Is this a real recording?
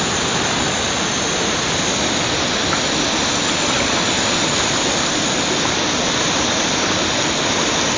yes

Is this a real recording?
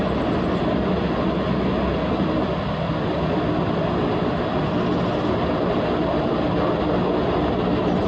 yes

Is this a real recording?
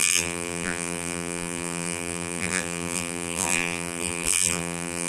no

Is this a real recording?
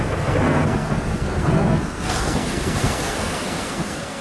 no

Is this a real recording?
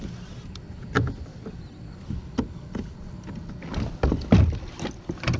yes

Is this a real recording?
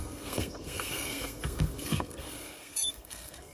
no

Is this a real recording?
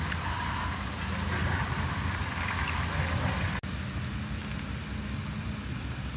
yes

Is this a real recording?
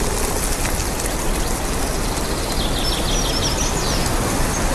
yes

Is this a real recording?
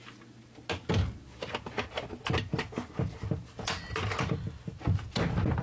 yes